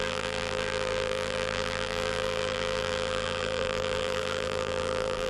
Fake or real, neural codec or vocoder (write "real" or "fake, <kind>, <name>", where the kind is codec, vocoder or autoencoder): fake, vocoder, BigVGAN v2